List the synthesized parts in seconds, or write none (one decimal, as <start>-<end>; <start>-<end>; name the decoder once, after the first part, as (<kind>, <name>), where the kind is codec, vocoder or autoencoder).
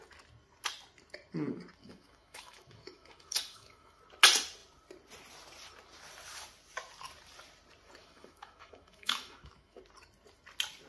1.8-4.0 (autoencoder, DAC-VAE); 8.0-9.8